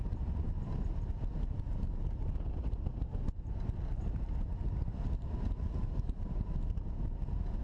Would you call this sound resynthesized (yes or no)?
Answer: no